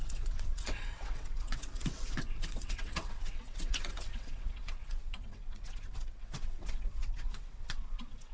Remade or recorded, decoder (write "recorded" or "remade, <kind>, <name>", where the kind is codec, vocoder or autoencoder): remade, vocoder, WaveNeXt